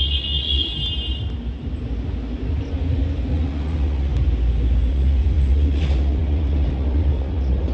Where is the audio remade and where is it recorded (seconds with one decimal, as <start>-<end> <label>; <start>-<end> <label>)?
0.0-0.7 remade; 0.7-3.3 recorded; 3.3-4.1 remade; 4.1-4.9 recorded; 4.9-7.7 remade